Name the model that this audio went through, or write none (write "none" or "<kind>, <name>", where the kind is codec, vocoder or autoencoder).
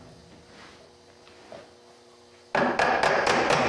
none